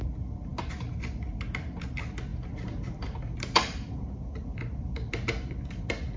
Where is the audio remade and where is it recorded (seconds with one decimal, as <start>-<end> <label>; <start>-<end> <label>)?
0.0-6.2 recorded